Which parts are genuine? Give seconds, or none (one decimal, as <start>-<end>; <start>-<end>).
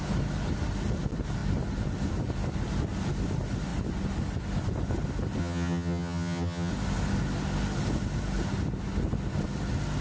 0.0-5.4; 6.7-10.0